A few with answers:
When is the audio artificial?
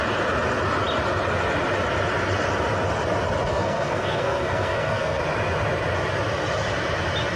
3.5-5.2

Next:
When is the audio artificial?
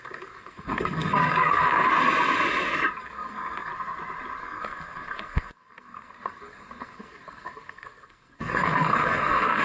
0.0-1.9; 3.0-3.7; 4.4-9.6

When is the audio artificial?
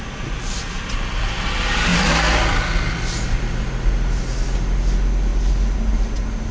none